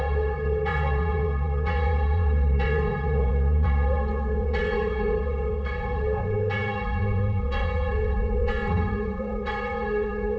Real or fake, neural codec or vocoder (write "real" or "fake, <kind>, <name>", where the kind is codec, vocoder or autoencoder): fake, vocoder, WaveNeXt